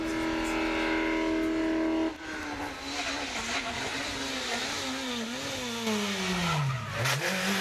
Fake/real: real